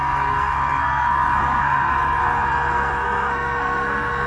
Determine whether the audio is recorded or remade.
remade